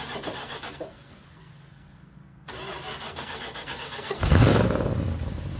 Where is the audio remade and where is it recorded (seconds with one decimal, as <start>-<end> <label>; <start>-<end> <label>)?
0.0-0.4 recorded; 0.4-2.5 remade; 2.5-2.9 recorded; 2.9-4.5 remade; 4.5-5.6 recorded